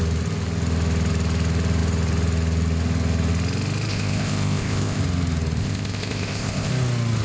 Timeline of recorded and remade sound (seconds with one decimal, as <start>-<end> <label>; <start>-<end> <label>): 0.0-3.9 recorded; 3.9-5.0 remade; 5.0-5.6 recorded; 5.6-6.7 remade; 6.7-7.2 recorded